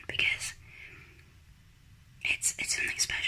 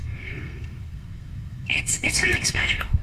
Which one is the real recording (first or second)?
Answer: first